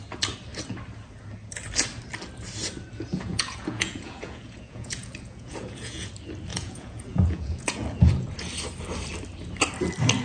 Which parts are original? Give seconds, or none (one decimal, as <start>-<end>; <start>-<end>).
0.0-3.1; 6.1-6.5; 8.3-10.2